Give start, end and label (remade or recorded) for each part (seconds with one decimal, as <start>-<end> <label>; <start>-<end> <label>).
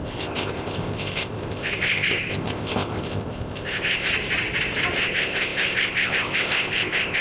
0.0-4.1 remade; 4.1-5.0 recorded; 5.0-7.2 remade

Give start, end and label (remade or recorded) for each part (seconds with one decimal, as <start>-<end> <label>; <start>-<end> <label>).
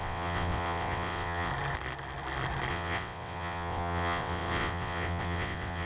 0.0-1.5 remade; 1.5-2.7 recorded; 2.7-5.9 remade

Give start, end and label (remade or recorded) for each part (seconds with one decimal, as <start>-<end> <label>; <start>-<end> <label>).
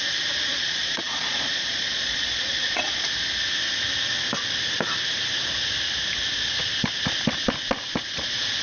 0.0-0.5 recorded; 0.5-3.1 remade; 3.1-8.6 recorded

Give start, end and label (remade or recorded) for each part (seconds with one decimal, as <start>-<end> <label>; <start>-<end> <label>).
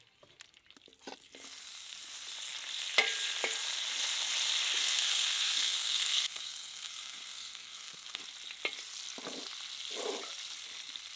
0.0-4.8 recorded; 4.8-8.2 remade; 8.2-11.2 recorded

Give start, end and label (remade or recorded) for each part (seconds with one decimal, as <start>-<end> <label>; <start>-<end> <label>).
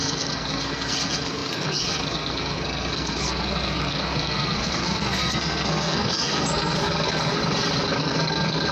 0.0-7.4 remade; 7.4-8.0 recorded; 8.0-8.7 remade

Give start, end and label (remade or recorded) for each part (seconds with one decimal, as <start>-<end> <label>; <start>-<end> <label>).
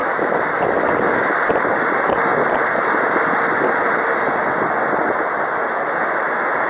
0.0-1.3 remade; 1.3-6.7 recorded